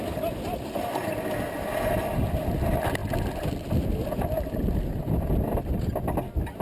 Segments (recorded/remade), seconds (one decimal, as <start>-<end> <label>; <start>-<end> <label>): 0.0-6.6 recorded

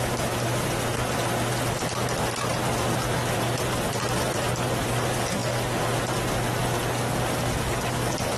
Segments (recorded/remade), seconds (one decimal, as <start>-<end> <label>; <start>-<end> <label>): 0.0-8.4 recorded

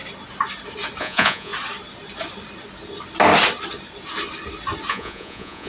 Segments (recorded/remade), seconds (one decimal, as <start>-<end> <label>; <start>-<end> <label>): 0.0-1.0 recorded; 1.0-1.5 remade; 1.5-4.9 recorded; 4.9-5.7 remade

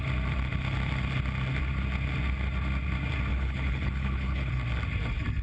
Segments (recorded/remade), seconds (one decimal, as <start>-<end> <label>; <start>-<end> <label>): 0.0-3.3 recorded; 3.3-4.5 remade; 4.5-5.4 recorded

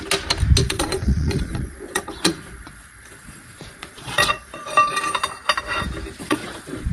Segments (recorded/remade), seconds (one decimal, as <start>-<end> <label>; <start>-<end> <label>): 0.0-0.6 recorded; 0.6-4.7 remade; 4.7-6.2 recorded; 6.2-6.9 remade

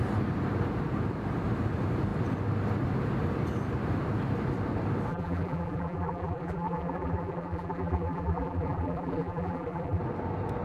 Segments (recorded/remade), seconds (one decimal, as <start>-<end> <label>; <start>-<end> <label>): 0.0-5.1 recorded; 5.1-10.0 remade; 10.0-10.6 recorded

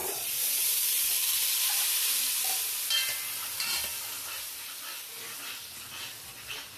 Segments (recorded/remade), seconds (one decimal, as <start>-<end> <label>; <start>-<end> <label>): 0.0-1.7 remade; 1.7-6.8 recorded

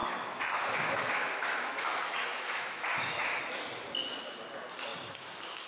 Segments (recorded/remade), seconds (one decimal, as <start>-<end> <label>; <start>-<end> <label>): 0.0-3.4 remade; 3.4-4.9 recorded; 4.9-5.7 remade